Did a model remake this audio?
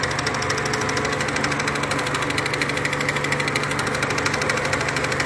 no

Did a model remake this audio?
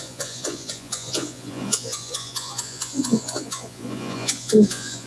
yes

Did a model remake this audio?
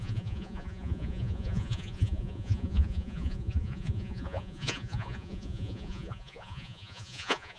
yes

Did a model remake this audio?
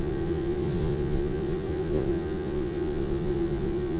yes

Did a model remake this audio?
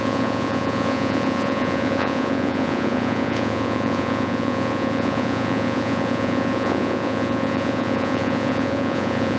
yes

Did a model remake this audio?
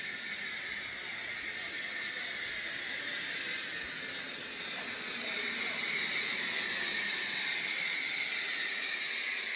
no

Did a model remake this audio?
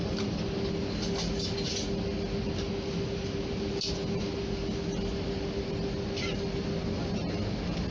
no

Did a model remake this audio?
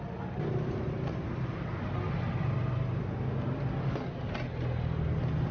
no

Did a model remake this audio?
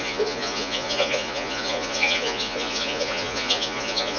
yes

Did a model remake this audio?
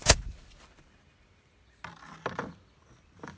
no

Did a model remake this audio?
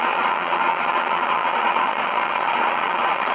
yes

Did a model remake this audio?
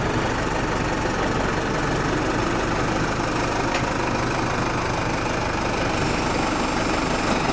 no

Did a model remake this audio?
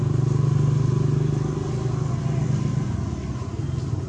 no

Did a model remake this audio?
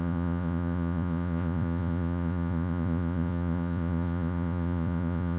yes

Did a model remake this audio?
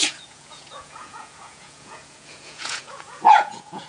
yes